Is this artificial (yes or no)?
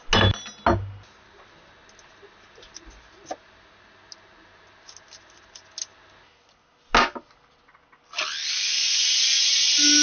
no